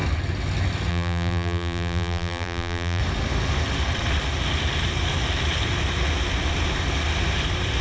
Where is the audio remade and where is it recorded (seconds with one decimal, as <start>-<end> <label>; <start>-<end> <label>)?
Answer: 0.0-0.9 recorded; 0.9-3.0 remade; 3.0-7.8 recorded